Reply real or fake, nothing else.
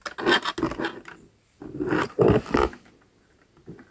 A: real